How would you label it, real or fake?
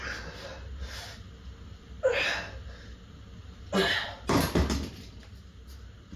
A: real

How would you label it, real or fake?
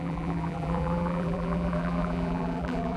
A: fake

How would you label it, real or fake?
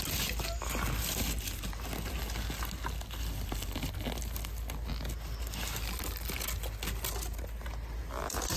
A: real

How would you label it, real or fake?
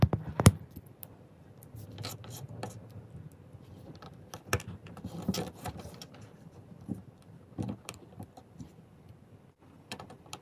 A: fake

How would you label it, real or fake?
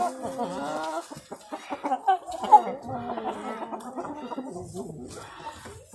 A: real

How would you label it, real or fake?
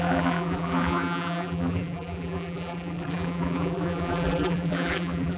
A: fake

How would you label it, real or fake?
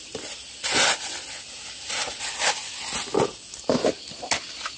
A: real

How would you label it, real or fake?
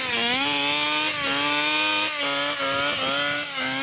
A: real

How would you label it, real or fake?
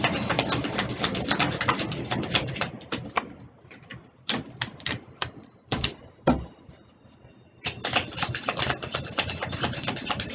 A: fake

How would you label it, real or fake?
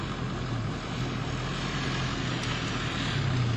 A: real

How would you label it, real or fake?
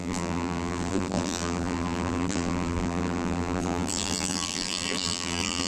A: fake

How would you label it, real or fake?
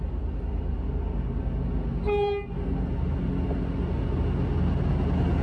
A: real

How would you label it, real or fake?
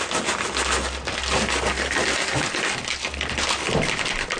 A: real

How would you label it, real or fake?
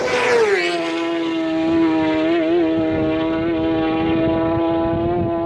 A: real